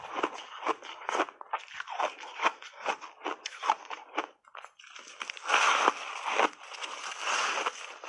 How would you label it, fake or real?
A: real